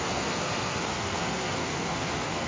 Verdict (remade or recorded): remade